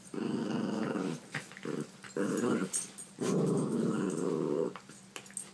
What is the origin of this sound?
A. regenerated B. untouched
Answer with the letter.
B